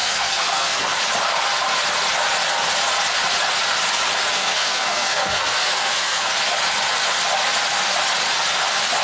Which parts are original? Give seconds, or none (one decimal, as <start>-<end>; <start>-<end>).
1.0-4.3; 6.3-9.0